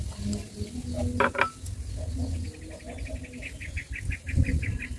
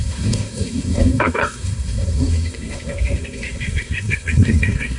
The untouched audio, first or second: first